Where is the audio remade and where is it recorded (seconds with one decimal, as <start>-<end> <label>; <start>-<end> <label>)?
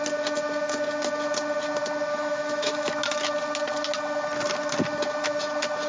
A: 0.0-2.1 recorded; 2.1-2.9 remade; 2.9-5.9 recorded